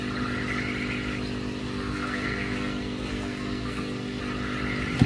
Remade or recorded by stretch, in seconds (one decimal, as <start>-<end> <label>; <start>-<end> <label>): 0.0-1.6 recorded; 1.6-4.2 remade; 4.2-5.1 recorded